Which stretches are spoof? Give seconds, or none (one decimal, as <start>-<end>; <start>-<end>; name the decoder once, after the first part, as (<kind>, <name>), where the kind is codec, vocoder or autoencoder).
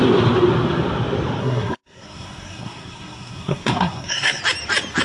1.4-4.4 (codec, SNAC)